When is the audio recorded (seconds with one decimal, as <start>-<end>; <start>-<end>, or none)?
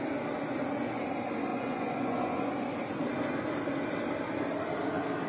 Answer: 0.0-1.5; 2.5-5.3